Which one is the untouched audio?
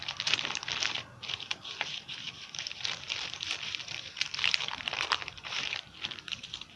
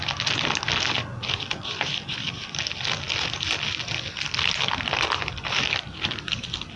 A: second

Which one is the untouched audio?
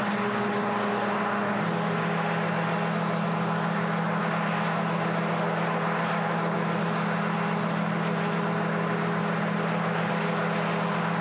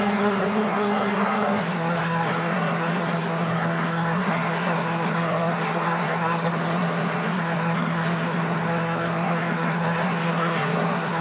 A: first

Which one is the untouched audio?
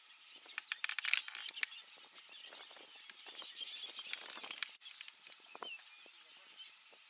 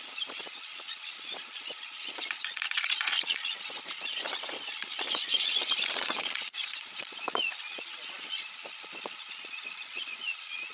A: first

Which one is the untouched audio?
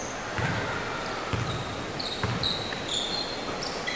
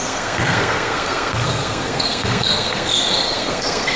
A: first